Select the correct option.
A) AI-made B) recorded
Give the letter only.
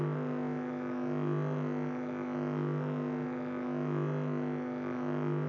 A